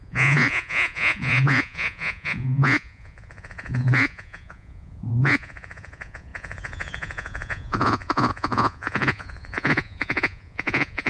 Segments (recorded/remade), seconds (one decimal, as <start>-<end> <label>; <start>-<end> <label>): 0.0-11.1 remade

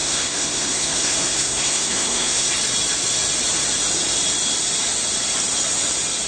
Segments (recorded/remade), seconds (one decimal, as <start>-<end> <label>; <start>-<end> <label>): 0.0-2.5 remade; 2.5-6.3 recorded

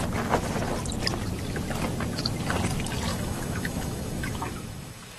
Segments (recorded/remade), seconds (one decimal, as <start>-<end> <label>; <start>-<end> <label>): 0.0-3.1 recorded; 3.1-5.2 remade

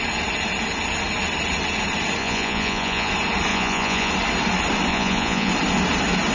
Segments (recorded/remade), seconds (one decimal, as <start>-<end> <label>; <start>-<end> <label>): 0.0-2.2 recorded; 2.2-3.1 remade; 3.1-3.5 recorded; 3.5-4.1 remade; 4.1-4.9 recorded; 4.9-5.5 remade; 5.5-6.3 recorded

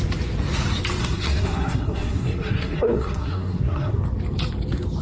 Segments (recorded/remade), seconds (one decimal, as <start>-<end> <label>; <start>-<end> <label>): 0.0-1.0 recorded; 1.0-4.0 remade; 4.0-5.0 recorded

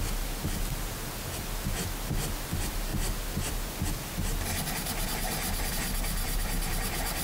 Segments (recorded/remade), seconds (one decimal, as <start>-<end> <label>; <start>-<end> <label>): 0.0-7.2 recorded

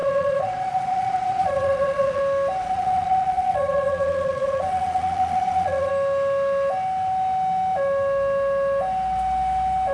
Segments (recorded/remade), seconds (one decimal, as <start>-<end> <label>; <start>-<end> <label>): 0.0-2.2 remade; 2.2-2.6 recorded; 2.6-5.9 remade; 5.9-9.9 recorded